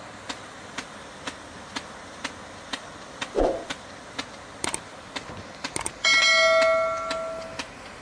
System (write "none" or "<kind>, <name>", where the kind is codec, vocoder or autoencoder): none